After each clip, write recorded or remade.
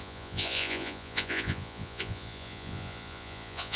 remade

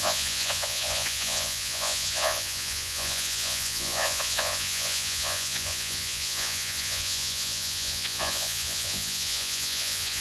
remade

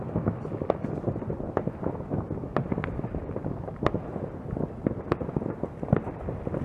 recorded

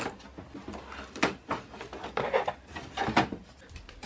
recorded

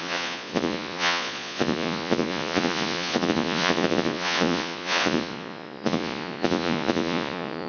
remade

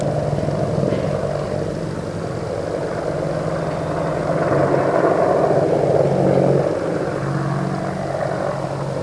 recorded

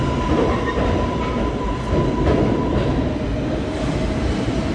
recorded